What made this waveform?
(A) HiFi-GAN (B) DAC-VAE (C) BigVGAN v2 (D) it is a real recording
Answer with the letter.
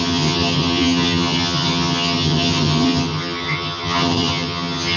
A